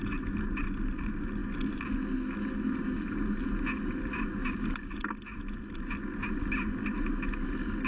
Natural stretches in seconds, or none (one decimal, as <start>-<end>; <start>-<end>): 0.0-7.9